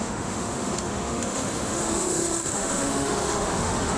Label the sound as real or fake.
fake